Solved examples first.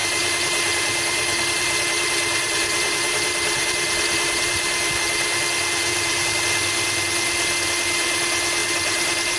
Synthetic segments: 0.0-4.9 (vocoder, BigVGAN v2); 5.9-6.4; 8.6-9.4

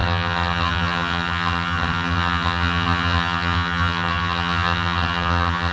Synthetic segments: 0.0-5.7 (vocoder, HiFi-GAN)

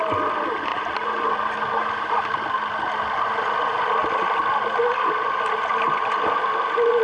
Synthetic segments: none

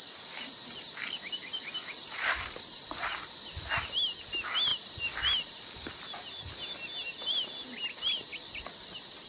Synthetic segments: 2.0-3.5 (vocoder, BigVGAN v2); 4.7-5.9; 8.3-9.3

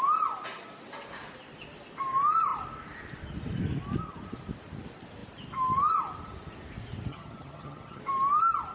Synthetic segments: 7.1-8.0 (vocoder, HiFi-GAN)

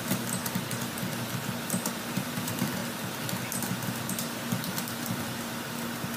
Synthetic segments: 0.0-0.4 (vocoder, BigVGAN v2); 2.1-2.8; 4.1-6.2

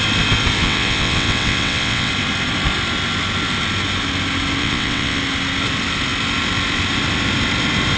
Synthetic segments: 0.6-2.1 (vocoder, WaveNeXt); 4.6-5.2